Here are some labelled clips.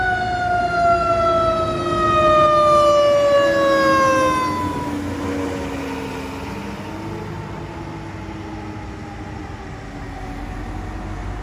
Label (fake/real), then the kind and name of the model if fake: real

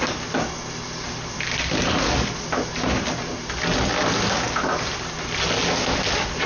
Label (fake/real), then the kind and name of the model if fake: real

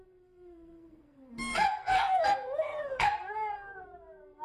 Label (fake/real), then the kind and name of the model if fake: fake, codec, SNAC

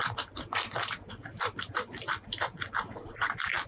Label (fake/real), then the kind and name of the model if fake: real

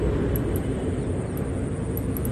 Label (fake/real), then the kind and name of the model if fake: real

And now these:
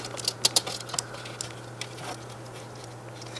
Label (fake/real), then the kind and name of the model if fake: real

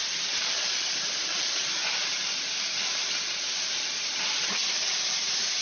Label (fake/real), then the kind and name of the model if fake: fake, vocoder, BigVGAN v2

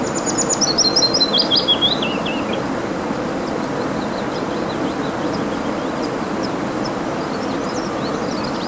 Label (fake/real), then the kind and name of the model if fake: real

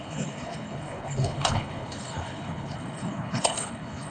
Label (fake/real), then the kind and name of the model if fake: fake, codec, HILCodec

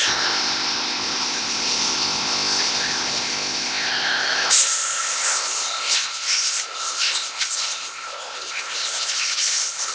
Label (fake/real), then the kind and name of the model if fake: fake, codec, ZipCodec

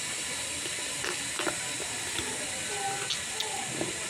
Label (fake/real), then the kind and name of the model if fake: real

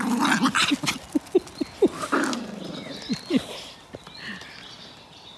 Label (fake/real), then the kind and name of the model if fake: real